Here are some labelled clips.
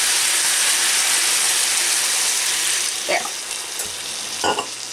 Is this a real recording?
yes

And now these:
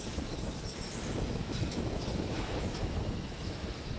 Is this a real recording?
no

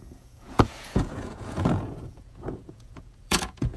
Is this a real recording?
no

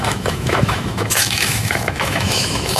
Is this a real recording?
no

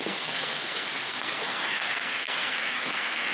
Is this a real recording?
no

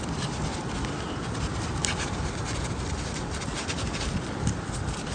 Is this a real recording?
yes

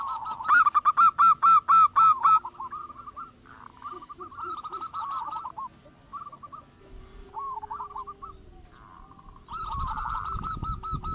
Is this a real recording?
yes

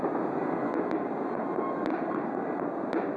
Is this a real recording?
yes